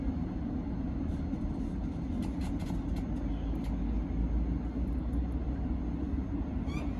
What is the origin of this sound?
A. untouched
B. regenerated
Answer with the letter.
A